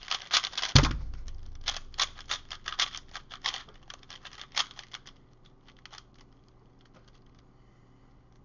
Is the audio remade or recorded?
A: recorded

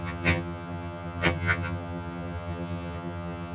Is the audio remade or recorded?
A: remade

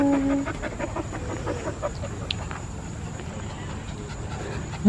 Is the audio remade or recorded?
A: recorded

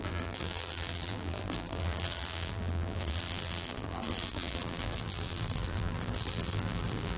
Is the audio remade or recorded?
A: remade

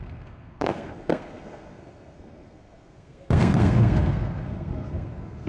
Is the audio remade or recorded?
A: remade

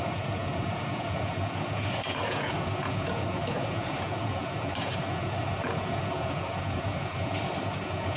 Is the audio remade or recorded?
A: remade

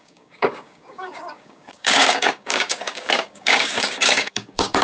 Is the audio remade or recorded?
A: remade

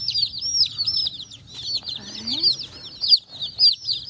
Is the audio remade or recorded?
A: recorded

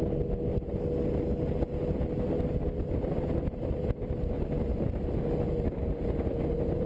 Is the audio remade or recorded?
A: recorded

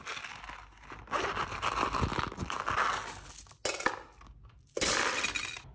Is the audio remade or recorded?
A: recorded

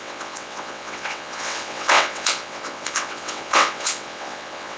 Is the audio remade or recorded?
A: remade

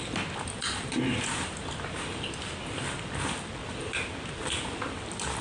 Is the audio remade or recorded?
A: recorded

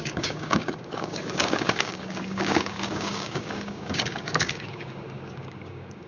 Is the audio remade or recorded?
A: remade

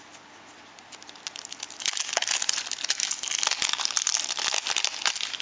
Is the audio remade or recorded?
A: recorded